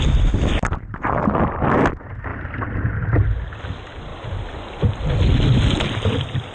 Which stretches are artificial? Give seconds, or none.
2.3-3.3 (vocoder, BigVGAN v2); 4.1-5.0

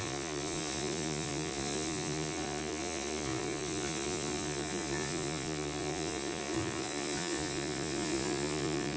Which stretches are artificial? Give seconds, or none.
0.0-9.0 (vocoder, Vocos)

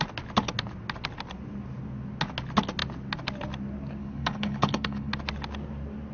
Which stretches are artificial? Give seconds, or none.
4.0-5.1 (codec, HILCodec)

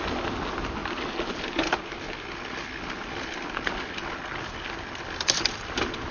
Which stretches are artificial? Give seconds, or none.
none

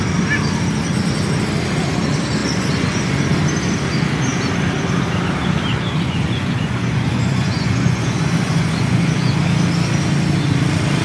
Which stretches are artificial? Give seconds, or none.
2.4-3.1 (vocoder, Vocos); 5.7-9.4

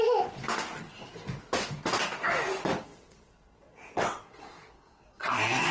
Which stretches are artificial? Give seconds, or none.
2.9-5.3 (vocoder, WaveNeXt)